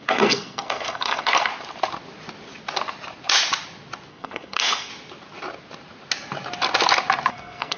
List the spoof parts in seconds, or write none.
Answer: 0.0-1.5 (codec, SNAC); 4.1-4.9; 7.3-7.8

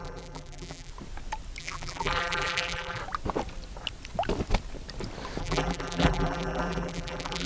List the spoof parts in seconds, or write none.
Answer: 0.0-0.9 (vocoder, BigVGAN v2); 1.6-3.0; 5.4-7.5

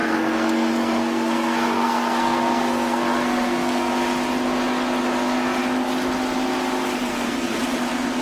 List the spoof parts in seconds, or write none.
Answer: 0.0-3.9 (codec, SNAC); 7.1-7.6

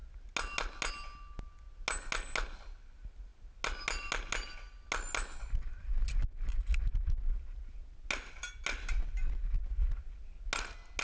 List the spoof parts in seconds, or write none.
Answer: none

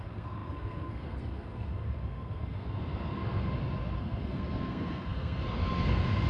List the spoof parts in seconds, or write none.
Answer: 0.0-3.5 (codec, SNAC); 4.0-6.3

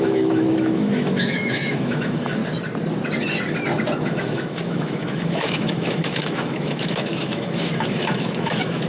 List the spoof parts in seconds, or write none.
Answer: 0.0-2.4 (autoencoder, DAC-VAE); 4.0-8.9

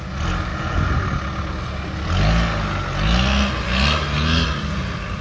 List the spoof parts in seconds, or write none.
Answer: none